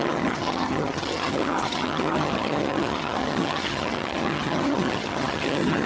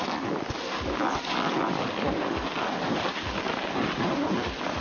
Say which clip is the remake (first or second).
first